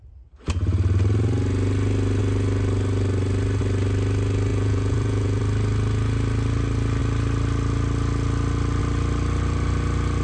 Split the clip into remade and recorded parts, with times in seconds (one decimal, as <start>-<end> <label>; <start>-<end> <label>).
0.0-4.5 recorded; 4.5-5.4 remade; 5.4-10.2 recorded